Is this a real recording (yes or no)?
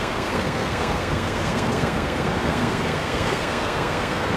no